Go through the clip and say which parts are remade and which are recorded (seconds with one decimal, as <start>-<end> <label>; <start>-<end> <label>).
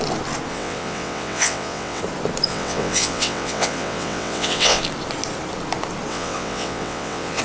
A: 0.0-0.5 recorded; 0.5-2.0 remade; 2.0-2.5 recorded; 2.5-4.8 remade; 4.8-6.1 recorded; 6.1-7.4 remade